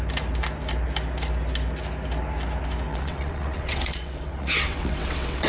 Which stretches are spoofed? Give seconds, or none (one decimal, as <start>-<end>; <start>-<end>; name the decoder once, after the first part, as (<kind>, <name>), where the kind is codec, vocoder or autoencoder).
2.9-5.5 (vocoder, WaveNeXt)